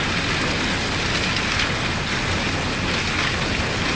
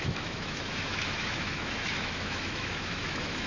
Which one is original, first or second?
first